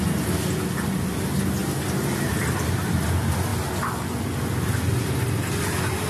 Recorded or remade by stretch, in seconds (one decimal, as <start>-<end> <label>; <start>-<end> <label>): 0.0-6.1 recorded